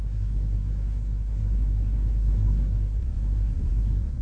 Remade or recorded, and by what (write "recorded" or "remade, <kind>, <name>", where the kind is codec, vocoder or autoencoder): remade, codec, SNAC